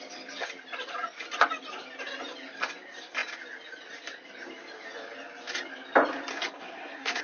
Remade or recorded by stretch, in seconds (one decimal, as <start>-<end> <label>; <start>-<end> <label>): 0.0-6.3 recorded; 6.3-7.2 remade